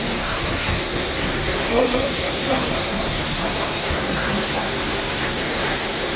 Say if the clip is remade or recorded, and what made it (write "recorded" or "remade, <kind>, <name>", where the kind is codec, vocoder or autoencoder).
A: remade, codec, SNAC